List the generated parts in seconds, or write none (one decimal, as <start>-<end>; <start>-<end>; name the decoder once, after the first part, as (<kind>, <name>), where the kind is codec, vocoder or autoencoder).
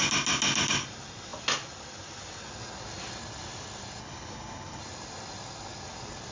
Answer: 4.0-4.8 (codec, HILCodec)